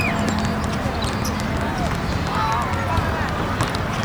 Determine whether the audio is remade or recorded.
recorded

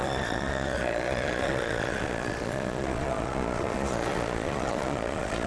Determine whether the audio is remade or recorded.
remade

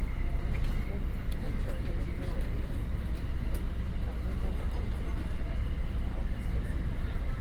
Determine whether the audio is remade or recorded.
recorded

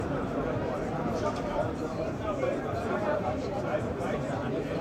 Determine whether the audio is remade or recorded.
remade